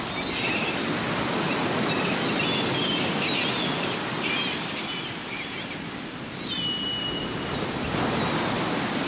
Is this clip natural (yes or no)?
yes